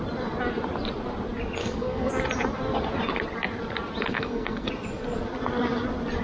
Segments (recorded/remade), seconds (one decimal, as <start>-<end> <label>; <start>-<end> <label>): 0.0-1.6 recorded; 1.6-2.1 remade; 2.1-4.1 recorded; 4.1-4.7 remade; 4.7-6.2 recorded